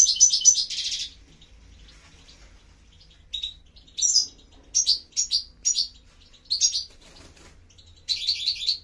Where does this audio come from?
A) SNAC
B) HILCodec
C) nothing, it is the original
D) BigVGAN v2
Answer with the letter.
C